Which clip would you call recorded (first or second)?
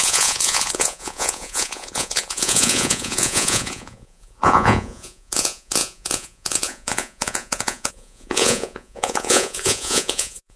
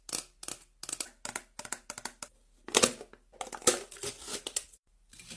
second